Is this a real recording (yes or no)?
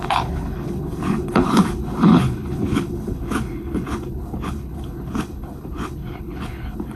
no